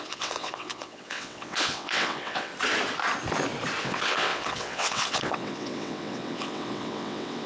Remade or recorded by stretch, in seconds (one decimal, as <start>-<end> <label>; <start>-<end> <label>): 0.0-2.5 remade; 2.5-3.8 recorded; 3.8-7.5 remade